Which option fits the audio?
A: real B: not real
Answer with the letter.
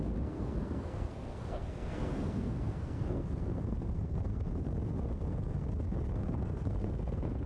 B